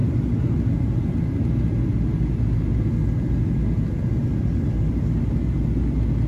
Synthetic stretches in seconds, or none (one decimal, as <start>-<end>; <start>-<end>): none